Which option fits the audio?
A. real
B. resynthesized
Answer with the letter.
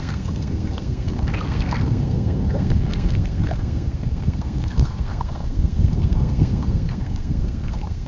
B